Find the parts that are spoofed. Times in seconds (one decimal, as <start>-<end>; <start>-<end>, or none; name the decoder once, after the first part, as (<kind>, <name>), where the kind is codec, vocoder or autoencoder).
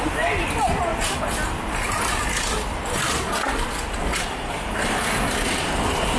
none